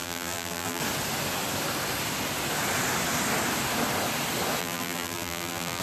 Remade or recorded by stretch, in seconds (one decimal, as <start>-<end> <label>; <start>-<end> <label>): 0.0-0.8 remade; 0.8-4.6 recorded; 4.6-5.8 remade